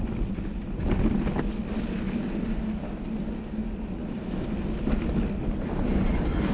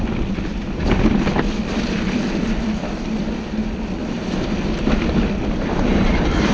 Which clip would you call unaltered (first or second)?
first